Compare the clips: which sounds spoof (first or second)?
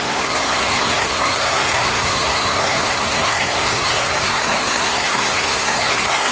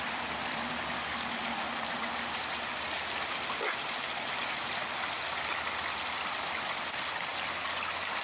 first